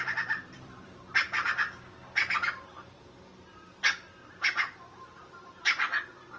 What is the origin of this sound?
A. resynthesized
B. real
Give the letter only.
A